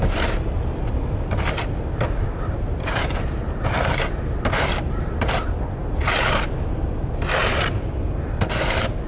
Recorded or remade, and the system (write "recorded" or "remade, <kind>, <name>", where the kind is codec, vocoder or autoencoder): recorded